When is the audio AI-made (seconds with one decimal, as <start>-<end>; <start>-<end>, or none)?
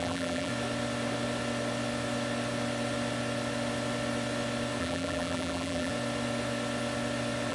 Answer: 0.0-0.5; 4.8-5.9